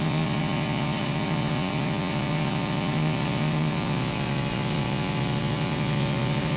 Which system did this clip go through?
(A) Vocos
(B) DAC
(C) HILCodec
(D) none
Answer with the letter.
A